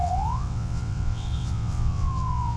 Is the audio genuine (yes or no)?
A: no